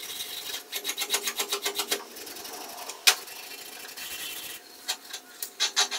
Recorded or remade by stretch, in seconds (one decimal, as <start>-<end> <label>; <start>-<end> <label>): 0.0-6.0 recorded